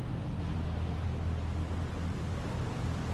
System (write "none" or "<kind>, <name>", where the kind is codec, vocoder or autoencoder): none